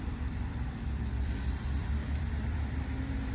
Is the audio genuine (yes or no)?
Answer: no